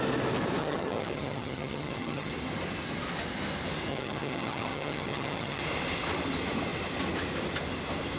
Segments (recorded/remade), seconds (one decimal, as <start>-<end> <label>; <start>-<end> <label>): 0.0-0.6 recorded; 0.6-2.3 remade; 2.3-3.9 recorded; 3.9-5.6 remade; 5.6-8.2 recorded

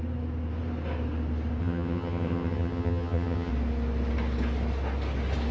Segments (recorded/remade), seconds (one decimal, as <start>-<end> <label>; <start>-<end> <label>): 0.0-1.6 recorded; 1.6-3.5 remade; 3.5-5.5 recorded